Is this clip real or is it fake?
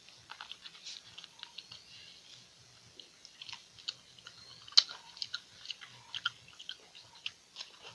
real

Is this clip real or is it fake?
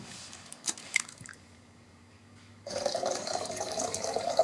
fake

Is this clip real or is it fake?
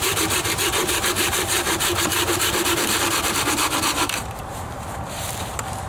fake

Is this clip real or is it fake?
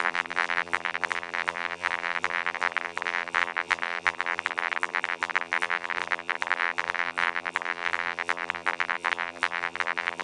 fake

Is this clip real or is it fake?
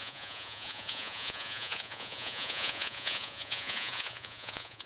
fake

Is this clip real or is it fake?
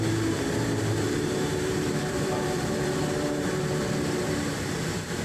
fake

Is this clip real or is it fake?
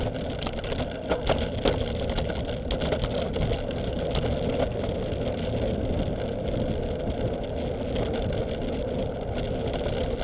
real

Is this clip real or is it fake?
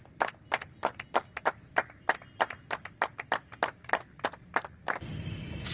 real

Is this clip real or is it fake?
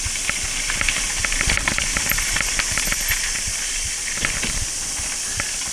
real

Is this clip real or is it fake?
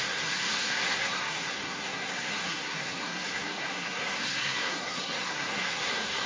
fake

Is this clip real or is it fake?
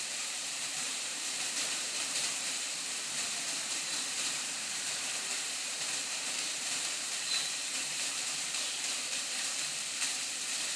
fake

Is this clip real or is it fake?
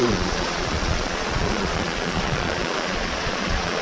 fake